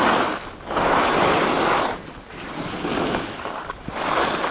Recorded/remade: recorded